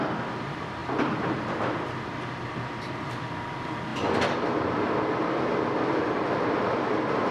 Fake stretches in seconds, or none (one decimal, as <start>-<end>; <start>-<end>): 0.0-7.3